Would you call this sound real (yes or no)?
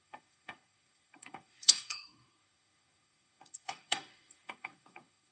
no